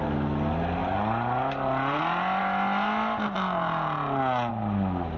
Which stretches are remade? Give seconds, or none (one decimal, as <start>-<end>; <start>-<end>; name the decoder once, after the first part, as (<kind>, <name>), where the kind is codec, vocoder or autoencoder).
none